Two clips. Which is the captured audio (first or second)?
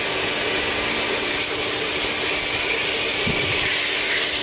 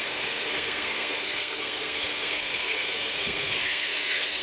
first